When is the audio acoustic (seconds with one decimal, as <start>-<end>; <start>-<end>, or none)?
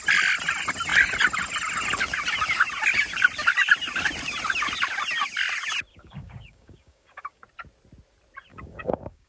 0.0-5.9; 7.4-8.5